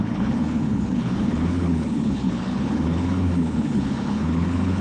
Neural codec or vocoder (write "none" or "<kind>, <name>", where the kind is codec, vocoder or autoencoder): codec, HILCodec